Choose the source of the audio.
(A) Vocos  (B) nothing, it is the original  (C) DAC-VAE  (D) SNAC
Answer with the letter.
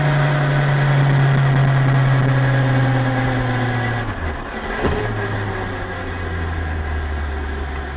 B